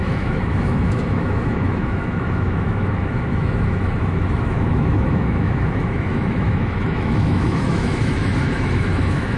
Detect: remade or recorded remade